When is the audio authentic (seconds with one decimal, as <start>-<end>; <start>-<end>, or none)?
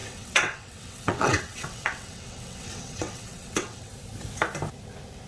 3.9-5.3